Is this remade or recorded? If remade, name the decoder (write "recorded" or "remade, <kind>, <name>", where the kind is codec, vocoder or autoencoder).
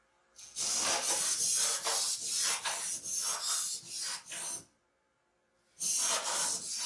recorded